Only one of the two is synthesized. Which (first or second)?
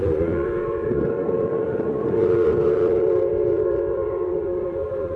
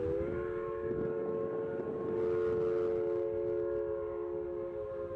first